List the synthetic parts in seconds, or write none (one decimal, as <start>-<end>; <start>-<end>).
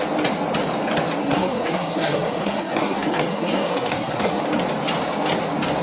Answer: 1.2-4.4